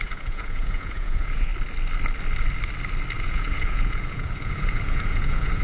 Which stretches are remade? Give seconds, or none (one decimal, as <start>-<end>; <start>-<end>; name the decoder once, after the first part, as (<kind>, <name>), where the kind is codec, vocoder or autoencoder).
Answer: 0.0-1.5 (vocoder, Vocos); 3.2-5.6